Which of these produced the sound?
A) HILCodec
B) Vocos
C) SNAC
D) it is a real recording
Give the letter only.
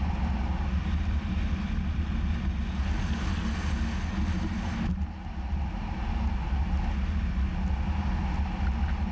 D